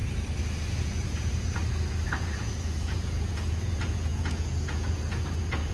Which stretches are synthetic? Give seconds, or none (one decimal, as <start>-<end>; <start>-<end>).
0.8-1.6; 2.2-5.7